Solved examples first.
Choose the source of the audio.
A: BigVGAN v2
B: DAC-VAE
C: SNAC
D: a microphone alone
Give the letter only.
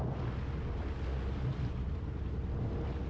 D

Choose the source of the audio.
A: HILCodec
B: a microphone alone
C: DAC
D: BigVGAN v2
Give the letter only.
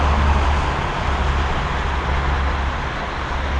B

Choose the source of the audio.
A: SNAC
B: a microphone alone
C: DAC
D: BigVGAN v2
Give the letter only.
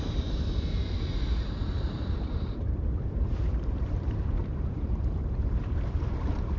D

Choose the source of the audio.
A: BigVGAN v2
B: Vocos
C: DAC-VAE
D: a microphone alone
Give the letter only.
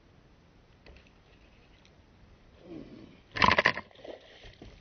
D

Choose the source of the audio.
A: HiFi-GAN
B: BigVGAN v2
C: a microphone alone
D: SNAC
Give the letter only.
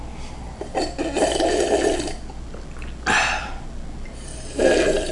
C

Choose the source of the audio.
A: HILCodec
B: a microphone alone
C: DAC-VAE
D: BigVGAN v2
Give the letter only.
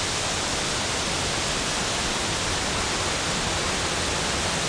B